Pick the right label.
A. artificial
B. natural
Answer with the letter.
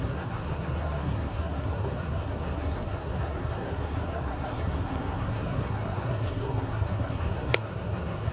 A